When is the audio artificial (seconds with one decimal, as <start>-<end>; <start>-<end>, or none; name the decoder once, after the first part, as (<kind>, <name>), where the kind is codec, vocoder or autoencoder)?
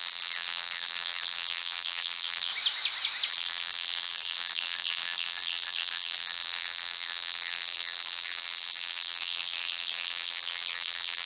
0.0-2.5 (vocoder, BigVGAN v2); 3.3-11.3